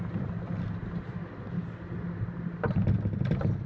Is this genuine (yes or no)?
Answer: yes